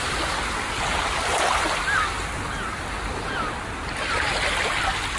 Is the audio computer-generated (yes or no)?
no